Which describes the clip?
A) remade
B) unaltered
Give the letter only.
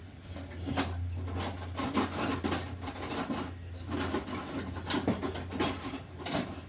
B